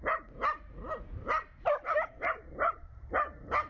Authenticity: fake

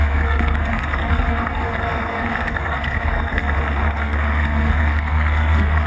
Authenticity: fake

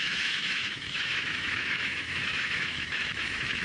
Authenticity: fake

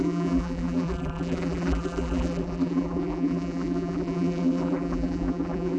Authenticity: fake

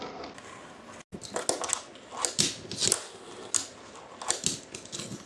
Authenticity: real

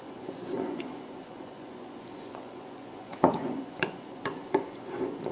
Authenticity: fake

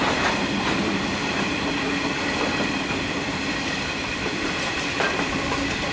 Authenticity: fake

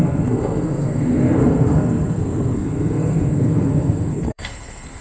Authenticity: fake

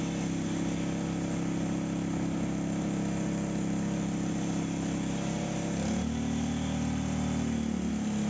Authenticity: real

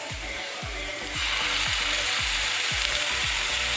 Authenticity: fake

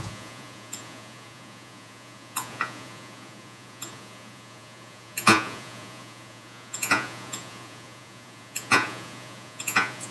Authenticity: fake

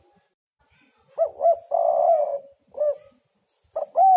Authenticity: real